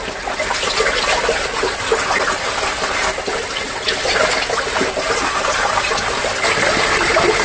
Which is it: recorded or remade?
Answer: recorded